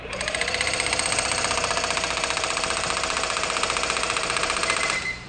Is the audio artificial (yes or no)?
yes